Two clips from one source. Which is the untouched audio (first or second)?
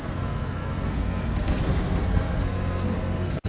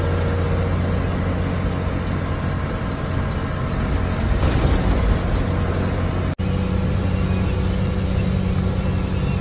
second